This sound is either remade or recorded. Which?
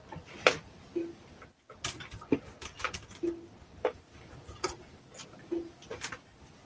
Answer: recorded